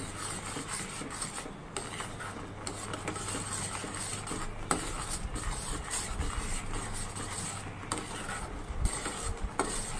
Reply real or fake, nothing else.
real